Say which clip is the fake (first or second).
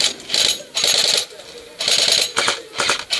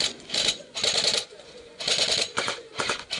second